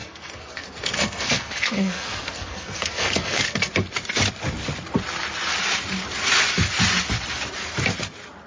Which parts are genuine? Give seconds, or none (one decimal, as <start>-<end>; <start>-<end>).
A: 3.7-8.5